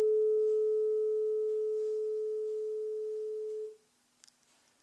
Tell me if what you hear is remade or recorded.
recorded